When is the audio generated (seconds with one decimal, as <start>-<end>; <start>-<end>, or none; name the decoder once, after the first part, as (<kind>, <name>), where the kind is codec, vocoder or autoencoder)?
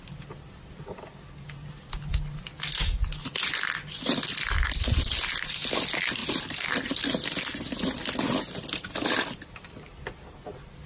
none